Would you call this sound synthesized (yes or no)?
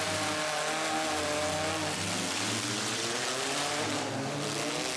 no